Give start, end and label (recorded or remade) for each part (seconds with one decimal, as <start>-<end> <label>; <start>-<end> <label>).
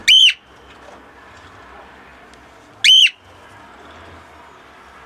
0.0-5.1 recorded